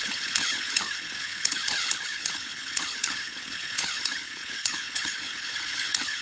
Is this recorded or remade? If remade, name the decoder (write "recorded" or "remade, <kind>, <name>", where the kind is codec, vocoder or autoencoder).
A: remade, codec, HILCodec